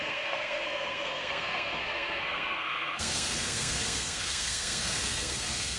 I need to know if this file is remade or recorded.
remade